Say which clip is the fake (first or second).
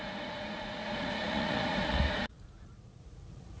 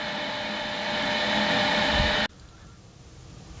first